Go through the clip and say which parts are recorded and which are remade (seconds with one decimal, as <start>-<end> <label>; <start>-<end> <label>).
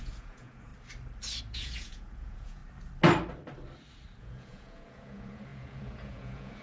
0.0-0.7 remade; 0.7-1.4 recorded; 1.4-2.6 remade; 2.6-4.2 recorded; 4.2-6.6 remade